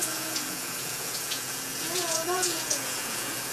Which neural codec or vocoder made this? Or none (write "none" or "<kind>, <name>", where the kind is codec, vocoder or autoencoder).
vocoder, Vocos